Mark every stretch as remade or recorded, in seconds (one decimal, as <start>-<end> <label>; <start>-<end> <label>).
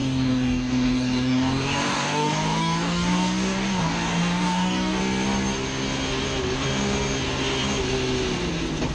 0.0-5.0 remade; 5.0-8.9 recorded